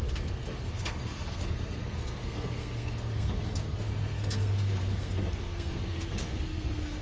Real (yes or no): no